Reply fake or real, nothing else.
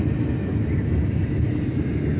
real